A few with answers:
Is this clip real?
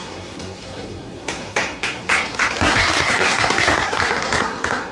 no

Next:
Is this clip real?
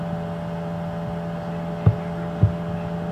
yes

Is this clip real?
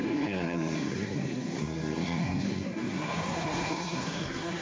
no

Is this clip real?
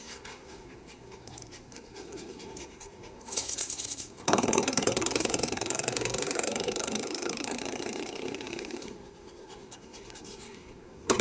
no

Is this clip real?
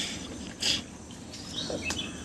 yes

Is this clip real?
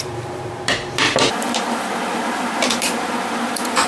no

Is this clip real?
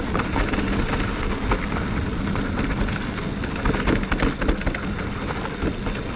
yes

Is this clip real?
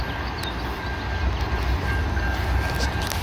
yes